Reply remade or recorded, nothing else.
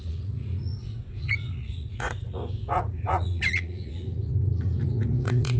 remade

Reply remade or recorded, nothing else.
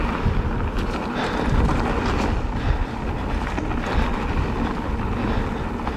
recorded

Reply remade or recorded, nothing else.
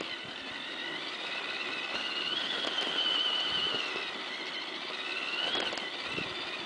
remade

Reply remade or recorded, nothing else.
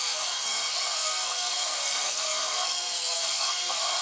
remade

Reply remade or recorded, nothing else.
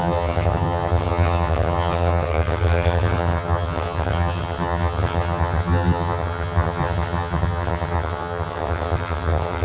remade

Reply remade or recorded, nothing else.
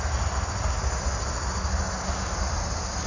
recorded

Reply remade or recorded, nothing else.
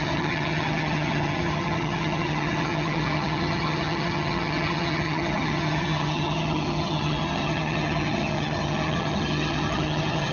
remade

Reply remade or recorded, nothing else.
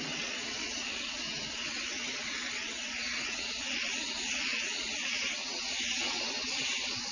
remade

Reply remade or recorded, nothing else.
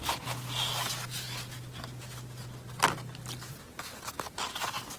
recorded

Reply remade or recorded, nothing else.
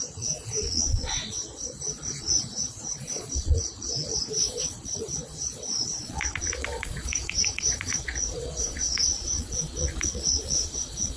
remade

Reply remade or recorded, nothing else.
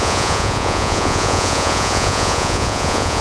remade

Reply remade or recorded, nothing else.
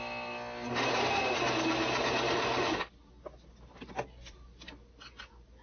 recorded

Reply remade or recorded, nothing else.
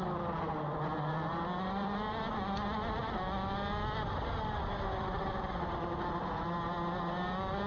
recorded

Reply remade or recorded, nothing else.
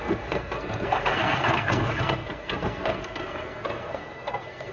remade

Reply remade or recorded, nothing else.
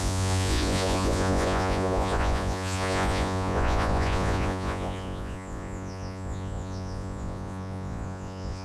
remade